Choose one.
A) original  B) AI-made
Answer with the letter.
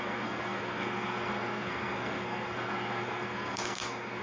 B